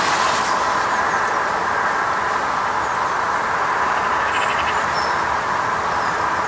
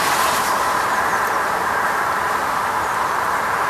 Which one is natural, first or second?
first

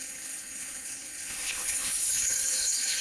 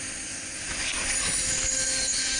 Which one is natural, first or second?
second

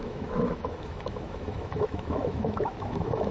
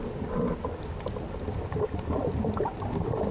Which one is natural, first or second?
second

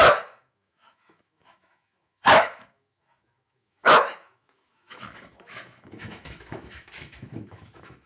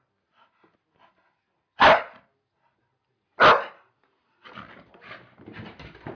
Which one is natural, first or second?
second